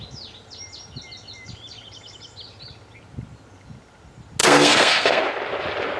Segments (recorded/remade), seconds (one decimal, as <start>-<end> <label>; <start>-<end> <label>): 0.0-4.4 recorded; 4.4-5.2 remade; 5.2-6.0 recorded